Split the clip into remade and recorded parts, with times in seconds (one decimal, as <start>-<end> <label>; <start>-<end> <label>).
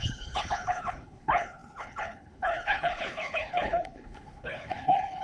0.0-5.2 remade